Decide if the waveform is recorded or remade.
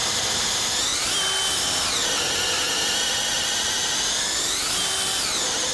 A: recorded